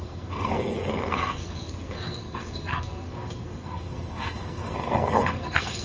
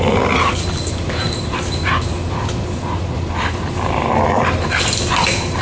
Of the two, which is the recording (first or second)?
second